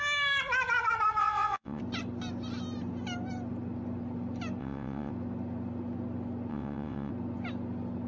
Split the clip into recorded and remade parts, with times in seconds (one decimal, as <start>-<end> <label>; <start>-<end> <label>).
0.0-1.2 recorded; 1.2-1.8 remade; 1.8-4.6 recorded; 4.6-5.1 remade; 5.1-6.5 recorded; 6.5-7.1 remade; 7.1-8.1 recorded